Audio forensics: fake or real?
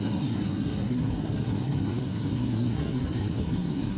fake